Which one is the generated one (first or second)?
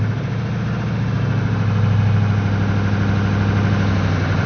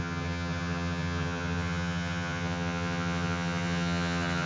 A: second